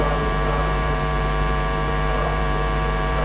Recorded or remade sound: remade